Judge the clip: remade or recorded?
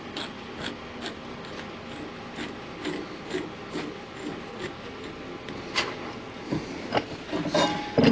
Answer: recorded